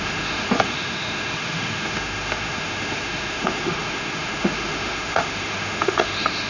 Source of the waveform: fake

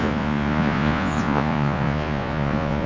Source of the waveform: fake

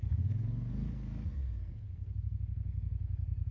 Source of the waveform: fake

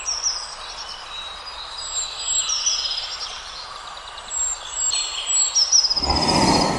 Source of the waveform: real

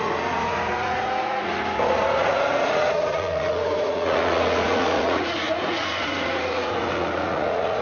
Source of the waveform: fake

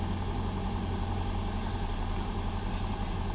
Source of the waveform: real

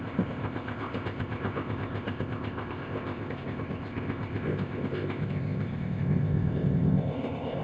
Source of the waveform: fake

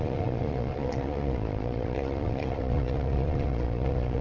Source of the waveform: fake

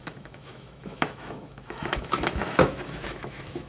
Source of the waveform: fake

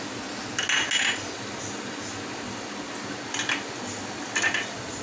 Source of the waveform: real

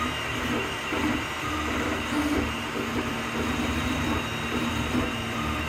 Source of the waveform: real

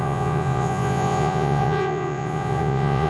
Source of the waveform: fake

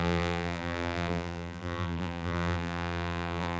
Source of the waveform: fake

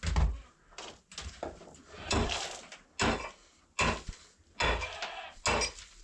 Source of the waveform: real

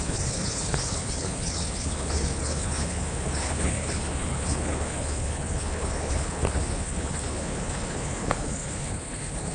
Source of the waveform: fake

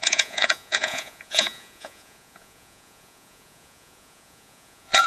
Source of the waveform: fake